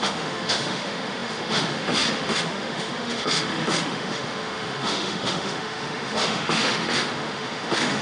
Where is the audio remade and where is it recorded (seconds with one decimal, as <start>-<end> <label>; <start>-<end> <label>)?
0.0-8.0 remade